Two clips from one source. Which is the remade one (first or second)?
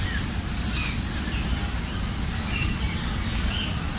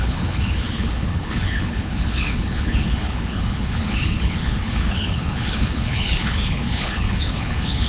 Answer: second